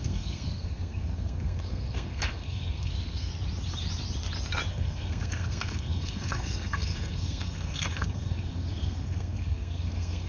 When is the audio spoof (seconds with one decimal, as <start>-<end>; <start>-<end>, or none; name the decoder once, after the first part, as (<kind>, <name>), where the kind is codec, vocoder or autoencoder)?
0.0-3.3 (codec, SNAC); 4.7-10.3